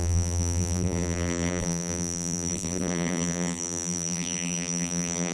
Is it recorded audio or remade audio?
remade